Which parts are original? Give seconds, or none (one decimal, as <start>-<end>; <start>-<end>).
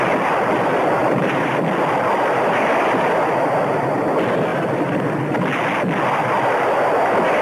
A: 0.0-1.0; 1.6-7.4